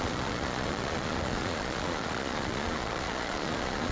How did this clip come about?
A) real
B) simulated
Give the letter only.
B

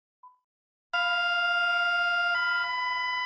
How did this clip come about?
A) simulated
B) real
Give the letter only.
B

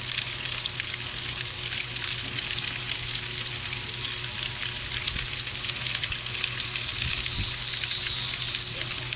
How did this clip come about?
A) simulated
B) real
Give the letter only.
B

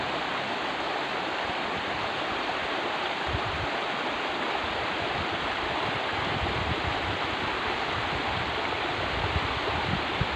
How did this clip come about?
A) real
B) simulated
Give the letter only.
B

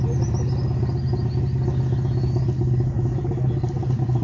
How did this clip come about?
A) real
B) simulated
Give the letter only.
A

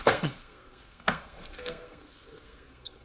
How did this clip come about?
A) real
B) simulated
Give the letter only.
B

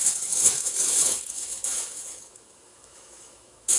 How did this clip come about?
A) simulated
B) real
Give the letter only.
A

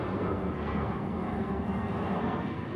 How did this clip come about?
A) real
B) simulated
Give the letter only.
B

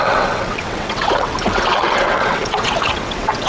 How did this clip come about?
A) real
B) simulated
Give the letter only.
B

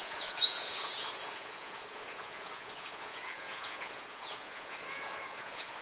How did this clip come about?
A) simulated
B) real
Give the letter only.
A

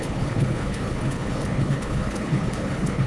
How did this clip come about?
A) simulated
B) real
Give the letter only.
A